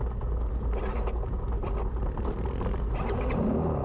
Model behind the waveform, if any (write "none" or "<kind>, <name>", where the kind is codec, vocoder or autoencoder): none